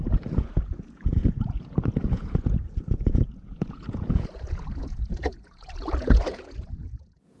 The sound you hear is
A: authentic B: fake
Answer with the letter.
B